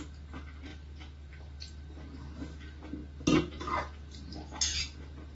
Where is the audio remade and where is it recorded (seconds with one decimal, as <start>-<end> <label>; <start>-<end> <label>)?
0.0-5.3 recorded